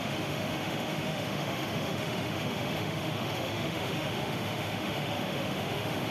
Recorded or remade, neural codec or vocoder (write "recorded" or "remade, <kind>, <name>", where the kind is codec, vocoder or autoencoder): remade, autoencoder, DAC-VAE